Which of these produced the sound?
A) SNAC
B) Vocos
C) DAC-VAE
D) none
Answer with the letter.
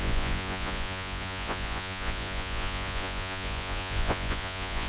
B